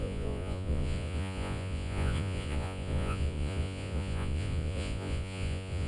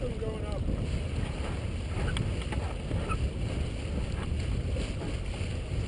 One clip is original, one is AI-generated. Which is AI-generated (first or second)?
first